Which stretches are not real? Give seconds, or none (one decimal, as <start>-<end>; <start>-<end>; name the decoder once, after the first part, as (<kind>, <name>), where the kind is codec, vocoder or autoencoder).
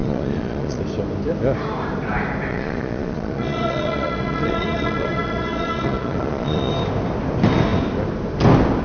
0.0-0.8 (vocoder, Vocos); 2.5-6.7